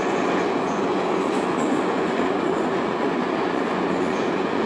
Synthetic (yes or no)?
yes